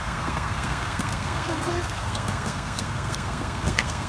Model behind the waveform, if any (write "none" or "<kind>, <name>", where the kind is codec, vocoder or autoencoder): codec, SNAC